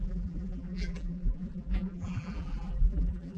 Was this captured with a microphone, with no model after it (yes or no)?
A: no